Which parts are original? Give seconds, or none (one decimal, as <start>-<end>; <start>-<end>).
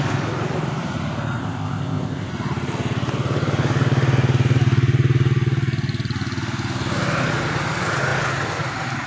0.0-1.4; 2.3-9.1